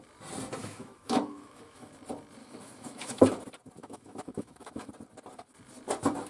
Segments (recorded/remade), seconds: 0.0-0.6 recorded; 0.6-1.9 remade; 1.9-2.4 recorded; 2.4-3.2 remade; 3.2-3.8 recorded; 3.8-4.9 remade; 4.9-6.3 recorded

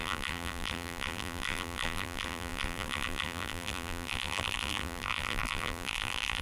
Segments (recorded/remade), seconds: 0.0-6.4 remade

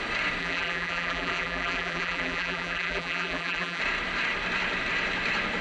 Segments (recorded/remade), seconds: 0.0-0.4 recorded; 0.4-3.8 remade; 3.8-5.6 recorded